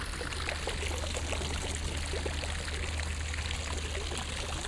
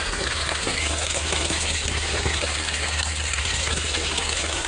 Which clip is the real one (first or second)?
first